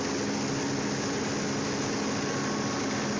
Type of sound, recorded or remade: recorded